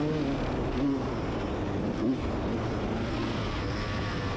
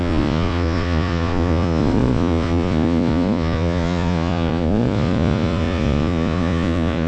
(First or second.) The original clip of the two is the first